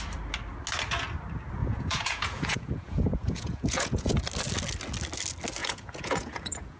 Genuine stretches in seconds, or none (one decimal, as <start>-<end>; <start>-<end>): 0.0-1.6; 4.2-5.6